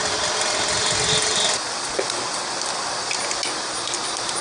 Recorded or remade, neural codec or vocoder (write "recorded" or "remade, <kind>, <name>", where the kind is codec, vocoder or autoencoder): recorded